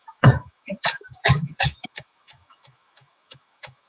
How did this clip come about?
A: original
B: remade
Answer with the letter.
B